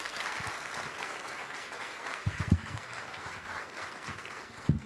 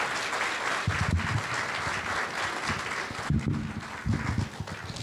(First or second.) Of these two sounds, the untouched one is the second